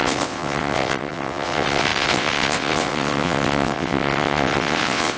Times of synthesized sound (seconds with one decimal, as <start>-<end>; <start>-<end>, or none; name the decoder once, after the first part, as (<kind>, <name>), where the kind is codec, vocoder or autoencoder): 0.0-5.2 (vocoder, WaveNeXt)